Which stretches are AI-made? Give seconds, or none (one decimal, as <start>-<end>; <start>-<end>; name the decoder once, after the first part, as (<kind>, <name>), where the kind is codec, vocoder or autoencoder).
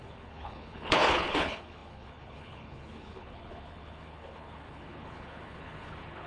0.0-6.3 (codec, HILCodec)